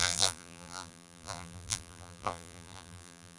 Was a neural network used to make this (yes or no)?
yes